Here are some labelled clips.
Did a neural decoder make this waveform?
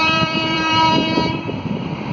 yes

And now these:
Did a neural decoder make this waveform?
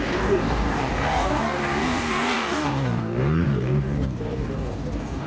yes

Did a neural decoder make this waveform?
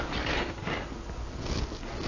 no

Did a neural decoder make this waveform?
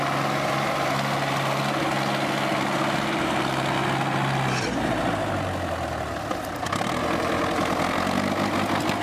no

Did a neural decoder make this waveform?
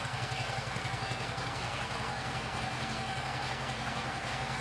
yes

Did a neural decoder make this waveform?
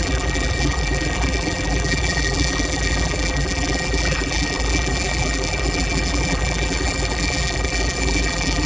yes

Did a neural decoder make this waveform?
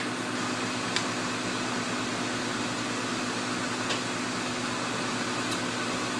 no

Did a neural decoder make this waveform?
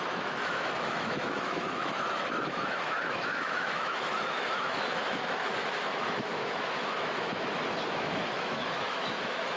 yes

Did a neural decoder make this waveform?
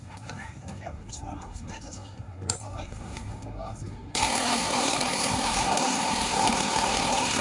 yes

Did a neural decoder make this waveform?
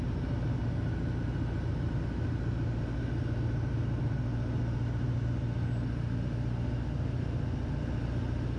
no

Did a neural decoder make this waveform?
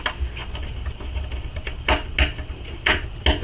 no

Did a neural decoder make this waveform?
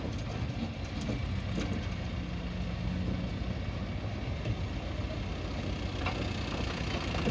no